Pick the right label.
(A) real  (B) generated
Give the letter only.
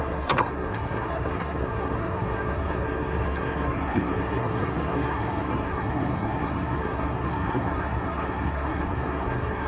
B